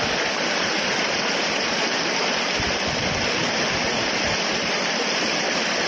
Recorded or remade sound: recorded